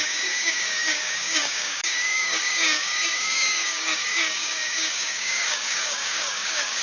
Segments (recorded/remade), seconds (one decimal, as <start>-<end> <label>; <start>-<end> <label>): 0.0-6.8 remade